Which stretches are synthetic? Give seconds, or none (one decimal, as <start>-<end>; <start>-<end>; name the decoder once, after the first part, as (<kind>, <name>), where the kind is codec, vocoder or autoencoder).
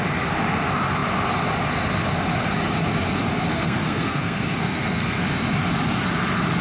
3.5-5.2 (codec, SNAC)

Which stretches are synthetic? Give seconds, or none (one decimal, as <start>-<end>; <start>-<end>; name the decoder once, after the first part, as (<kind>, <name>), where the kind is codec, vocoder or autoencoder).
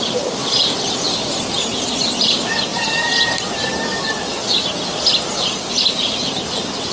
none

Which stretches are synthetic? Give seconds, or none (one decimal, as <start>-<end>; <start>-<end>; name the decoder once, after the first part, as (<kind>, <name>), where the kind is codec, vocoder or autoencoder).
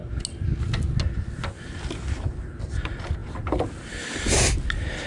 none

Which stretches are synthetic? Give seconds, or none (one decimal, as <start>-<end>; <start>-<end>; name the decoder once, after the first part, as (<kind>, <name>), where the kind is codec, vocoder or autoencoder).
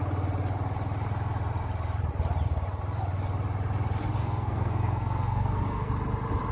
4.2-5.9 (codec, SNAC)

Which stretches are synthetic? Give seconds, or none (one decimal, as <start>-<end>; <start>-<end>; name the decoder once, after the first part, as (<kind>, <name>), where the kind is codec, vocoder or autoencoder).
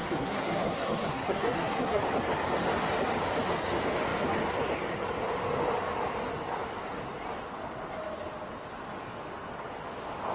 0.0-2.0 (codec, SNAC)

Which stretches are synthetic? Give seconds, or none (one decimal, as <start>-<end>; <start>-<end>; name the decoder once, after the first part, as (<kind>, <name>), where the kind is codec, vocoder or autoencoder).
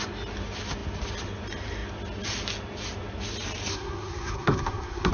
3.7-5.1 (codec, SNAC)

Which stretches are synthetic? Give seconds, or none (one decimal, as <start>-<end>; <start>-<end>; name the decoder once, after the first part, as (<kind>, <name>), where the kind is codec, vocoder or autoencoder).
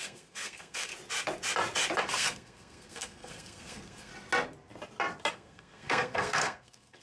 0.0-0.9 (codec, SNAC); 2.0-4.1; 5.3-7.0